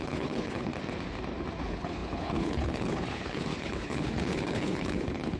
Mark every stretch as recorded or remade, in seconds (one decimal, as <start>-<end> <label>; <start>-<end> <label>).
0.0-0.7 remade; 0.7-1.6 recorded; 1.6-5.4 remade